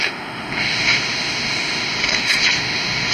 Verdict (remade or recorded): remade